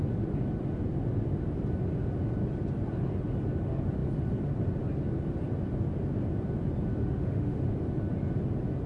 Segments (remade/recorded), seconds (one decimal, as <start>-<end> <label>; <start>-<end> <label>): 0.0-7.0 recorded; 7.0-7.6 remade; 7.6-8.9 recorded